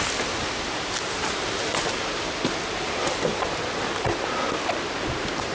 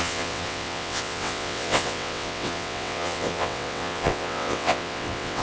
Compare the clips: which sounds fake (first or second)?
second